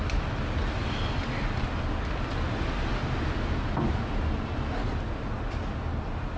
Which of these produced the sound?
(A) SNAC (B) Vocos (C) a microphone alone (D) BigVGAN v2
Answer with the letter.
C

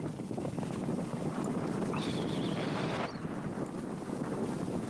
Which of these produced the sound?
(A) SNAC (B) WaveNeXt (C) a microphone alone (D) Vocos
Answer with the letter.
C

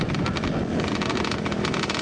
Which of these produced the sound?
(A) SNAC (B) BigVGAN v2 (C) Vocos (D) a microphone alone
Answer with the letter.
D